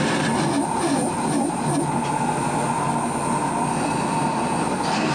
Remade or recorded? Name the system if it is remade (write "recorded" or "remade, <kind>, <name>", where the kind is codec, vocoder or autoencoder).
recorded